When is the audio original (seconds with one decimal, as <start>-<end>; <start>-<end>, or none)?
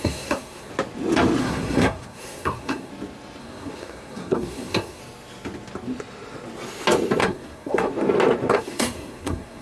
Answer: 0.7-1.4; 2.9-3.4; 5.0-7.2; 7.9-8.5